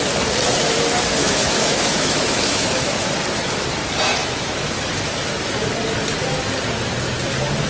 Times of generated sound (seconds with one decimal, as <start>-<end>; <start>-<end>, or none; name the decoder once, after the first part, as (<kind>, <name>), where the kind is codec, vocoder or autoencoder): 1.2-3.1 (autoencoder, DAC-VAE); 4.2-4.9